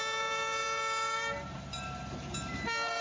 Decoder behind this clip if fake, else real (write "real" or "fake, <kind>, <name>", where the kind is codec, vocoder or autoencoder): fake, vocoder, BigVGAN v2